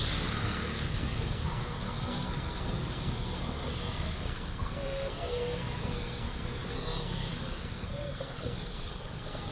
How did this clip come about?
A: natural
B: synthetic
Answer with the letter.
B